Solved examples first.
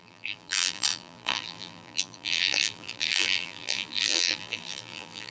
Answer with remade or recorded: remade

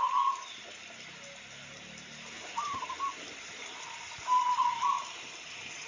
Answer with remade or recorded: recorded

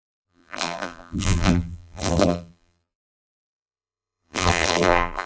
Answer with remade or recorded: remade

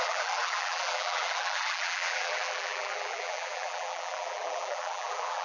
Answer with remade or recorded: remade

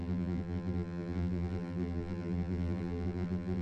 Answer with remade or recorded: remade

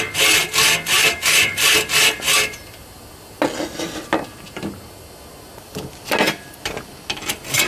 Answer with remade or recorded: recorded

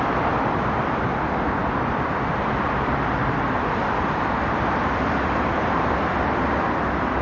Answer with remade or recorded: remade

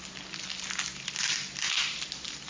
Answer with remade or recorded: recorded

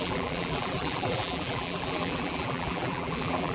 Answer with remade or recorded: remade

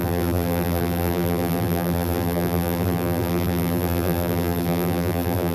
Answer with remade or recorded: remade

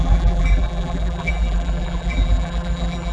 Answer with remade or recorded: remade